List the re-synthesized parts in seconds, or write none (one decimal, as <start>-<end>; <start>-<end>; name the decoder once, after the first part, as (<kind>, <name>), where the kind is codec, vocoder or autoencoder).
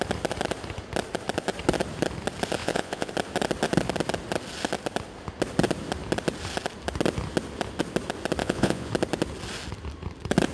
2.6-3.1 (vocoder, Vocos); 8.4-8.9